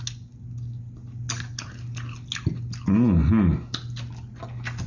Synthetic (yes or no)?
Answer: no